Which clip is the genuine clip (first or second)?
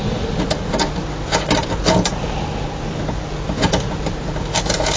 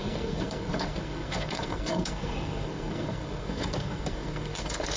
first